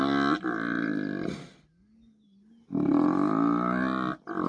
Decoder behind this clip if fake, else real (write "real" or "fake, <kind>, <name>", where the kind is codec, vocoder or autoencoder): real